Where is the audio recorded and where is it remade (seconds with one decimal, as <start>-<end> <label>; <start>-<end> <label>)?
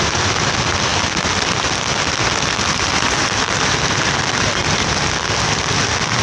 0.0-0.9 recorded; 0.9-4.6 remade; 4.6-6.2 recorded